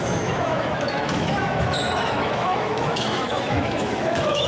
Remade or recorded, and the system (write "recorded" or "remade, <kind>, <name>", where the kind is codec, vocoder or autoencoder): remade, autoencoder, DAC-VAE